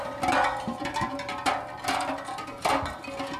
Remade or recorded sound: recorded